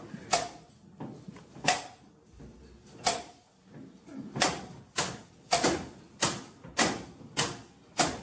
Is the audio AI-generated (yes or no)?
no